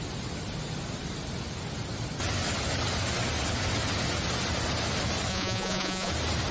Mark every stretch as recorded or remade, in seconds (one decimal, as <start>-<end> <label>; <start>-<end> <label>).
0.0-5.3 recorded; 5.3-6.1 remade; 6.1-6.5 recorded